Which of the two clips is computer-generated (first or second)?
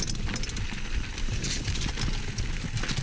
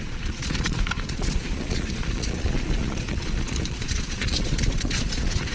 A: second